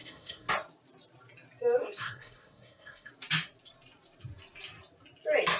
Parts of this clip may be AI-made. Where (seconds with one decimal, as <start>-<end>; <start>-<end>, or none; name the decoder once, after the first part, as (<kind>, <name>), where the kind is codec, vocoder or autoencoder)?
0.0-0.5 (codec, SNAC); 1.8-3.1